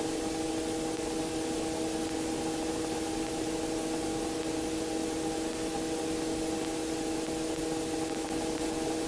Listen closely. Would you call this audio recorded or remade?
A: recorded